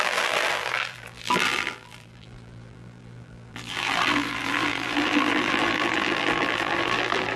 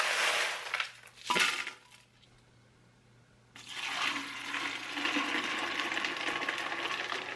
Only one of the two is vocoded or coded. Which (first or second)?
first